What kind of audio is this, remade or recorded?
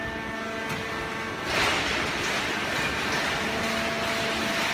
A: recorded